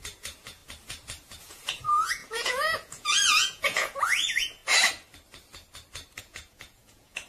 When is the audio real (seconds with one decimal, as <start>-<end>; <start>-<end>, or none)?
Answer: 0.6-1.4; 4.6-6.2